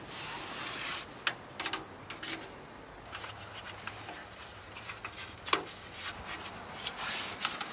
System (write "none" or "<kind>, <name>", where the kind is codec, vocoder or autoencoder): none